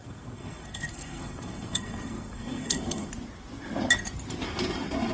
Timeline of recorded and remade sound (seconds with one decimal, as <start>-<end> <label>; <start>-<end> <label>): 0.0-3.1 remade; 3.1-5.1 recorded